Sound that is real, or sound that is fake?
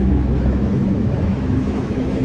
fake